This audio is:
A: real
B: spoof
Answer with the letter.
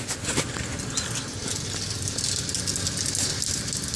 A